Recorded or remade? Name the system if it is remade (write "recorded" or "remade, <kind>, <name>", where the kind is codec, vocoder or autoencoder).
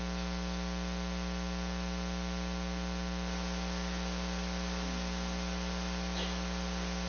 recorded